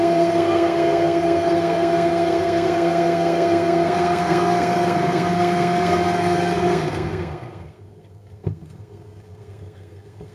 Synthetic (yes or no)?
yes